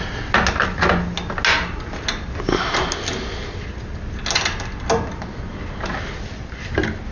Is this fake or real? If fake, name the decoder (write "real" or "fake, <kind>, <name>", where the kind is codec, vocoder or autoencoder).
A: real